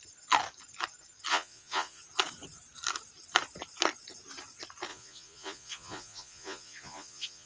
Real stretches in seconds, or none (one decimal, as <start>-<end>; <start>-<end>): 0.0-1.3; 2.0-4.9